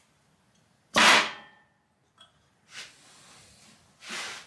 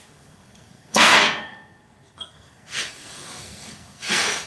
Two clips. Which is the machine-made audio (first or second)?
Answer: second